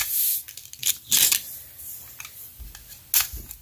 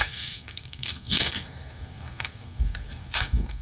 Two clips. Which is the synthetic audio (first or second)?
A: second